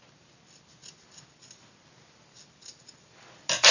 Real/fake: real